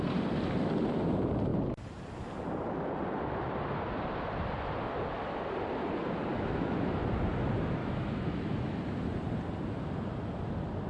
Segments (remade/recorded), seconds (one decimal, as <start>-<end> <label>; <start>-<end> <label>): 0.0-6.3 recorded; 6.3-7.0 remade; 7.0-7.8 recorded; 7.8-8.5 remade; 8.5-10.9 recorded